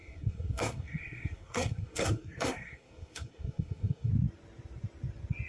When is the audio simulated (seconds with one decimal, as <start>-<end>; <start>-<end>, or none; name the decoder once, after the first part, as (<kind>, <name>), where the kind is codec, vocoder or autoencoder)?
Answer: 0.0-4.1 (codec, SNAC)